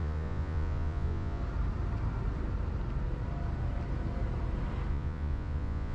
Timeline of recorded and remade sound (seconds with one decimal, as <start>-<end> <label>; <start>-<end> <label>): 0.0-1.4 remade; 1.4-4.9 recorded; 4.9-5.9 remade